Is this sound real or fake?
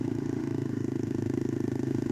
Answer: fake